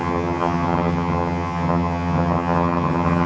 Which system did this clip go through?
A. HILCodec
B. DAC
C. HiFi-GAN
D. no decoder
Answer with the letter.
C